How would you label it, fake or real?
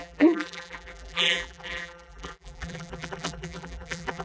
fake